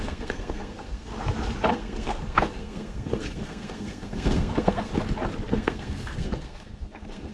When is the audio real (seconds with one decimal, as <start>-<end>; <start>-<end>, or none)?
1.1-1.7; 4.9-5.5